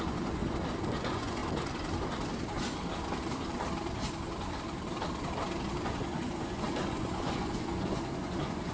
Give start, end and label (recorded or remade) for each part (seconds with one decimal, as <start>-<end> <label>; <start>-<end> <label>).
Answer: 0.0-0.4 remade; 0.4-0.9 recorded; 0.9-1.4 remade; 1.4-5.7 recorded; 5.7-8.7 remade